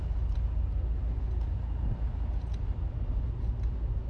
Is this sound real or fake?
real